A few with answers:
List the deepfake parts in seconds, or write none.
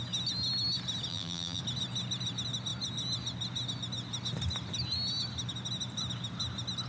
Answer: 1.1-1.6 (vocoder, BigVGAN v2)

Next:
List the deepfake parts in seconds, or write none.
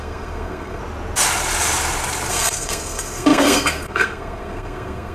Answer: 0.0-0.8 (codec, SNAC); 2.3-5.1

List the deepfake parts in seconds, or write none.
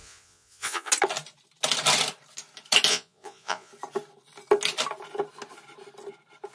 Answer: 0.0-0.9 (vocoder, Vocos); 2.9-3.7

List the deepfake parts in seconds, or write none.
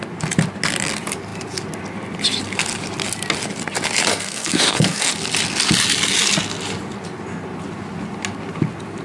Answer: 4.1-5.1 (codec, SNAC)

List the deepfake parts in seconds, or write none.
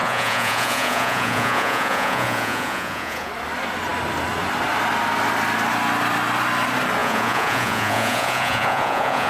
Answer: 0.0-3.3 (vocoder, Vocos); 7.0-9.3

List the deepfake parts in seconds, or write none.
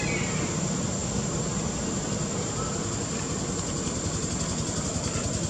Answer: none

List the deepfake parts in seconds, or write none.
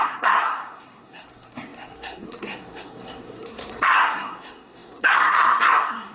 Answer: 0.0-6.1 (codec, SNAC)